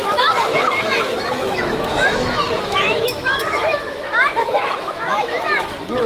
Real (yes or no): no